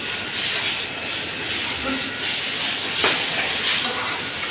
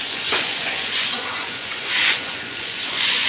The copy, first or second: second